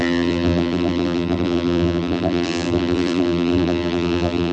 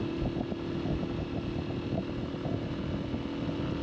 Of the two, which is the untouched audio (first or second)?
second